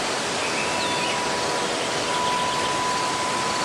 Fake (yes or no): no